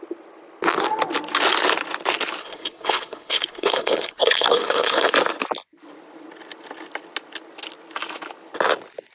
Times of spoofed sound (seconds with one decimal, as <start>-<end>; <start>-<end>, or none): 2.4-5.1